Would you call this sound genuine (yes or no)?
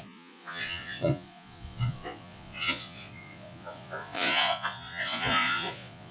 no